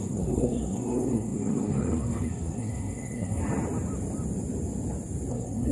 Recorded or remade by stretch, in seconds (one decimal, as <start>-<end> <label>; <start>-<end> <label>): 0.0-3.4 remade; 3.4-5.3 recorded; 5.3-5.7 remade